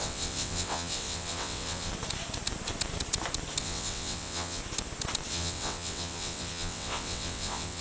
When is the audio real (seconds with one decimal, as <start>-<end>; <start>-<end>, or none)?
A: 1.9-3.6; 4.6-5.3